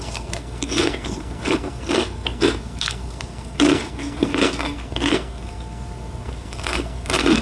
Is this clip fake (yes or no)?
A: yes